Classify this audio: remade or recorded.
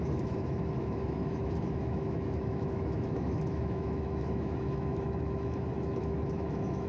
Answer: remade